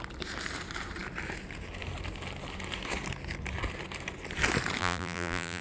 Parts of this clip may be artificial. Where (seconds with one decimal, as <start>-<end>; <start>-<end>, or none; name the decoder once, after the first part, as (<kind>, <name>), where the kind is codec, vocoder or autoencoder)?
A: 4.8-5.6 (vocoder, BigVGAN v2)